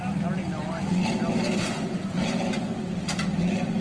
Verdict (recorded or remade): recorded